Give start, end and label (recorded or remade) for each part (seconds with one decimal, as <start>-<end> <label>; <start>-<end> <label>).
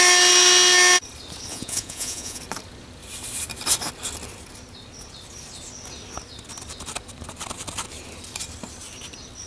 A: 0.0-1.5 recorded; 1.5-2.4 remade; 2.4-9.5 recorded